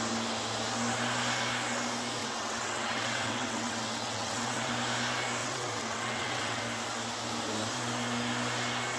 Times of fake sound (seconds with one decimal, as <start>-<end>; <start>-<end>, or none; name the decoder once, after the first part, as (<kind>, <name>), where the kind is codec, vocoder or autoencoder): 2.2-4.7 (vocoder, WaveNeXt); 5.4-6.6